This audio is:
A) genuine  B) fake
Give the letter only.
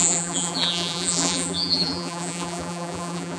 B